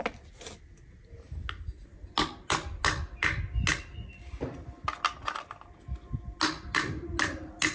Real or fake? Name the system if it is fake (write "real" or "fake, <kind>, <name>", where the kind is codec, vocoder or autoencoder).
real